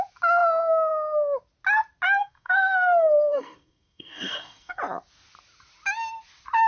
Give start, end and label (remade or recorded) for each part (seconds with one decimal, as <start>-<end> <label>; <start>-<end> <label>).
0.0-2.2 recorded; 2.2-4.8 remade; 4.8-6.7 recorded